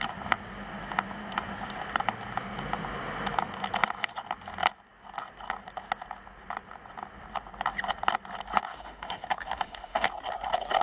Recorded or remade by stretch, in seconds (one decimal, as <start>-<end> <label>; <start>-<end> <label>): 0.0-8.7 recorded; 8.7-10.1 remade; 10.1-10.8 recorded